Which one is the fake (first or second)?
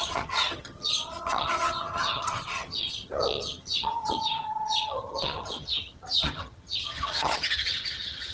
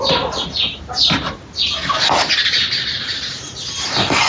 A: first